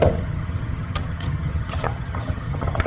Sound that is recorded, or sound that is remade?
remade